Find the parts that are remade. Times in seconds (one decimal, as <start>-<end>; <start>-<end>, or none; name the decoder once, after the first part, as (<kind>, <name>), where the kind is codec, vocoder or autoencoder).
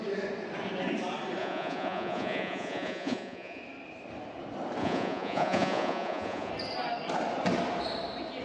1.4-3.6 (vocoder, Vocos); 4.8-6.5